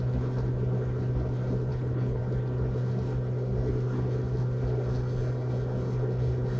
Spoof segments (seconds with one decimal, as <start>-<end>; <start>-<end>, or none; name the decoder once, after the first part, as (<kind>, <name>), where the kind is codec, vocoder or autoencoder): 1.7-2.2 (codec, HILCodec)